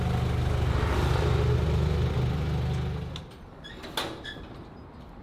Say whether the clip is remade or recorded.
recorded